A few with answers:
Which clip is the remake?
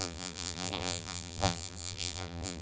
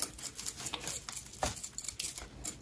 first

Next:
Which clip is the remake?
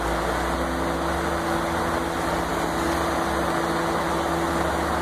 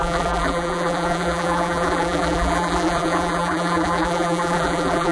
second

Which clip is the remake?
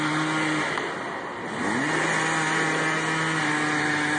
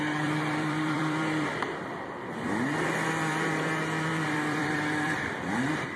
second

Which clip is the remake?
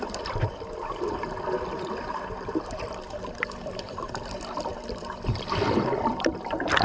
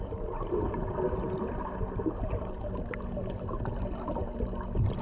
first